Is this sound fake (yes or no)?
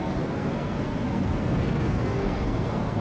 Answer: yes